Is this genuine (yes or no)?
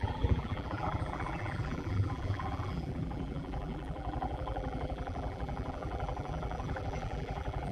no